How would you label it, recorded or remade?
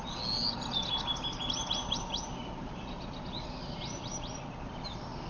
recorded